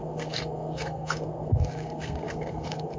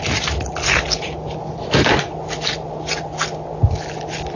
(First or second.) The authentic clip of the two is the second